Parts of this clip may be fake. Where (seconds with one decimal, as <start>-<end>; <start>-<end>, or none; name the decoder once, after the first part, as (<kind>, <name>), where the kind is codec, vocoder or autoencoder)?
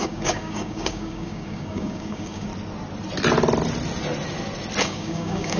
0.0-2.5 (codec, DAC); 4.8-5.6